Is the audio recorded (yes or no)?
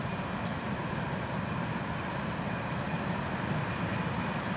yes